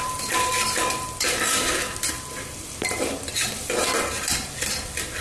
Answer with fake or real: fake